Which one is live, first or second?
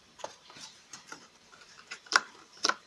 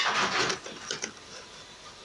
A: second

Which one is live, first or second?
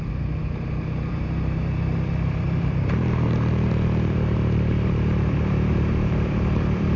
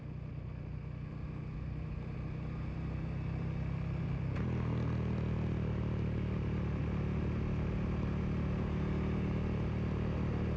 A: second